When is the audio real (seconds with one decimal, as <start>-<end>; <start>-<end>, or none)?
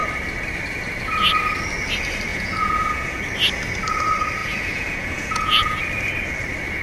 0.0-2.3; 3.2-4.4; 5.8-6.8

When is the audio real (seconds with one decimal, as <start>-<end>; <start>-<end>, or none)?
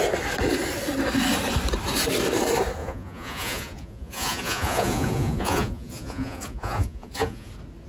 0.0-2.8; 7.5-7.9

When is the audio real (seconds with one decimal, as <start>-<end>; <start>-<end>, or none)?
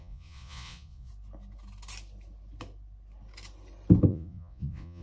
1.1-4.1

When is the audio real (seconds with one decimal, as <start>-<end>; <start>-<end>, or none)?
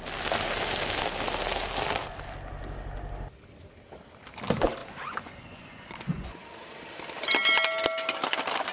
0.0-4.8; 6.4-8.7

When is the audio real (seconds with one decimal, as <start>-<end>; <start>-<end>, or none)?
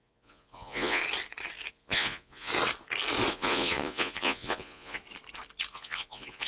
1.0-1.7; 2.5-3.3; 5.0-5.7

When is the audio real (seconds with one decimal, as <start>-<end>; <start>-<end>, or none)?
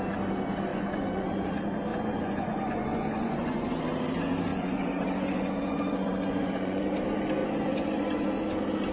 0.0-0.7; 1.5-1.9; 3.8-4.5; 6.8-7.4; 8.3-8.9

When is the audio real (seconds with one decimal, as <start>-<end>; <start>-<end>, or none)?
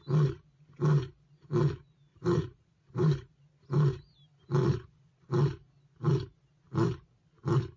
0.0-2.1; 3.3-4.6; 5.1-7.8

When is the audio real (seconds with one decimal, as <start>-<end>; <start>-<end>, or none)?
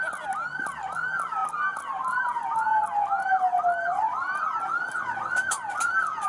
0.0-6.3